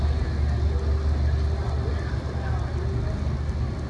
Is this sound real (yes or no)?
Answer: yes